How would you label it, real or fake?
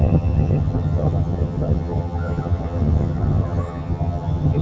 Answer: fake